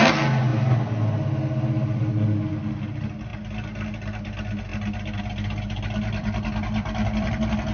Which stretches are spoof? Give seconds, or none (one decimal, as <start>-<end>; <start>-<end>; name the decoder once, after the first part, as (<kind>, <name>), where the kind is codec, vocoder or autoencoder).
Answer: 6.2-7.3 (vocoder, BigVGAN v2)